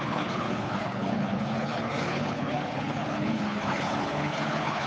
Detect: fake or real fake